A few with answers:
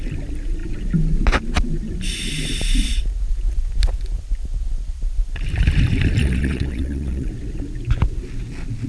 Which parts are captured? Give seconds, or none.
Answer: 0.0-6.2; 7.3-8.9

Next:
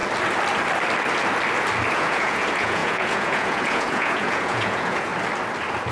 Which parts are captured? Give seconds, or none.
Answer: 0.0-1.9; 5.1-5.9

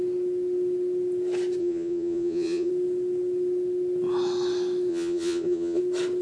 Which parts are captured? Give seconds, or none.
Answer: 0.0-1.6; 2.7-4.9; 5.8-6.2

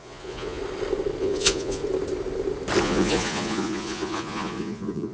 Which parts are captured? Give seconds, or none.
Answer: 0.6-1.2; 1.8-2.8

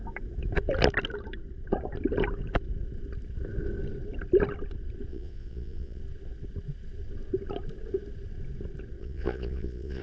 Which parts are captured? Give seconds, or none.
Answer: 0.0-5.1; 6.0-9.0